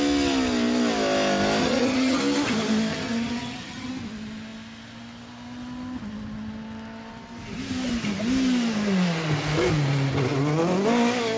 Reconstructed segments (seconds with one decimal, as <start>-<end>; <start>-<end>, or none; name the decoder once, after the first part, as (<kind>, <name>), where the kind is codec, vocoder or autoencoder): 1.6-2.2 (vocoder, HiFi-GAN); 2.9-3.9